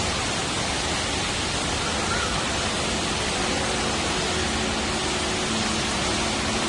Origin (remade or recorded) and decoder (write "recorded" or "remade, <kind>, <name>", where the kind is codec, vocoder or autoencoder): recorded